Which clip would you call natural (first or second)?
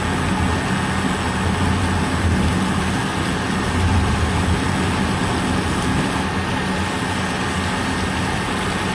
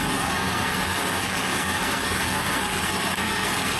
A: first